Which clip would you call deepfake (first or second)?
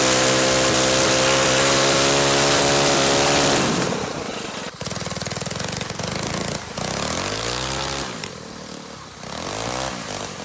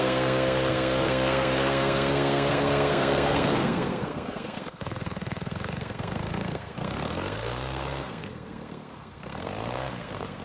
second